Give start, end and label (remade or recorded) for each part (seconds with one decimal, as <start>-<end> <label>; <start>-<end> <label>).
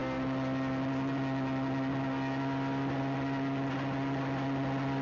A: 0.0-5.0 recorded